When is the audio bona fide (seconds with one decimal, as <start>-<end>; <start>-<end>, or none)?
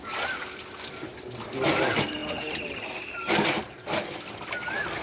0.0-5.0